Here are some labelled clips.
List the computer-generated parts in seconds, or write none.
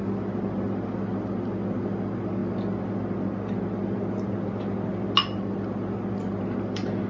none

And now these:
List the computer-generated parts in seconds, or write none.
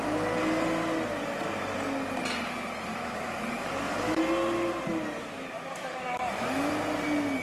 2.9-4.2 (autoencoder, DAC-VAE); 5.2-6.7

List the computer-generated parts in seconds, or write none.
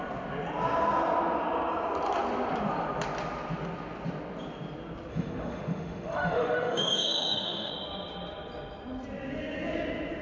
5.1-7.7 (autoencoder, DAC-VAE)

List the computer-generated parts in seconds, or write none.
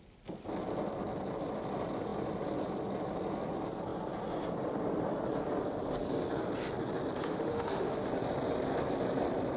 7.2-8.1 (autoencoder, DAC-VAE)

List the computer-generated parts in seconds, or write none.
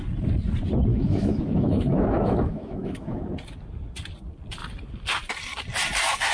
0.9-3.3 (autoencoder, DAC-VAE)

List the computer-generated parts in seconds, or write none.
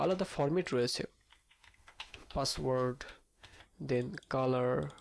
1.3-3.6 (autoencoder, DAC-VAE)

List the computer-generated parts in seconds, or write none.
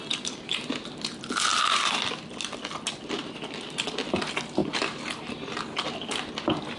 none